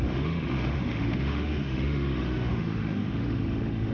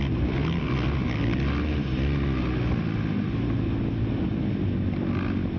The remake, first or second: first